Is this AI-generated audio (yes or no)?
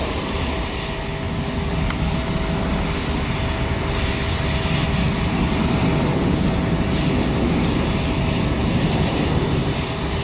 no